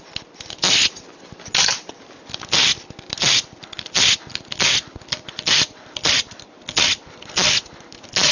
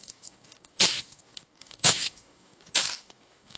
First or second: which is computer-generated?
second